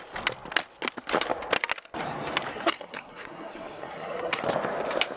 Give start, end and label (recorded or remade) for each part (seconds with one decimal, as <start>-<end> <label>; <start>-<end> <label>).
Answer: 0.0-2.5 recorded; 2.5-4.4 remade; 4.4-5.2 recorded